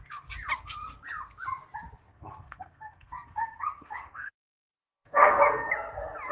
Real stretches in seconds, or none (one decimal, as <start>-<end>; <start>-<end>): 0.0-2.1; 5.4-6.3

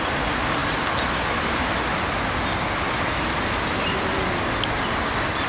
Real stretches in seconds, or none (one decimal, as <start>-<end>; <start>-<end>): 0.0-5.5

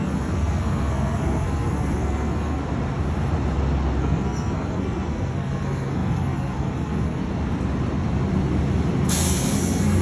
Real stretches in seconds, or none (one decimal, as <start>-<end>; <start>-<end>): 2.6-4.0; 7.2-9.1